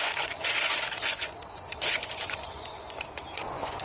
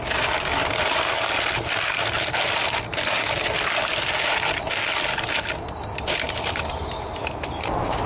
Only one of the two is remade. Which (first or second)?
first